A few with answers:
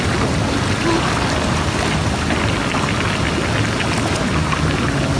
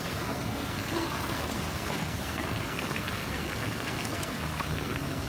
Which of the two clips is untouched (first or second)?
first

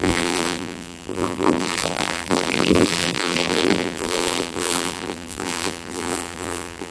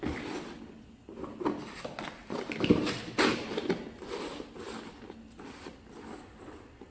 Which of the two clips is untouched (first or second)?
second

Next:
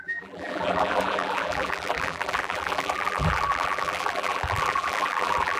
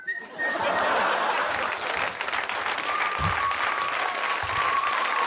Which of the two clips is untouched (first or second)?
second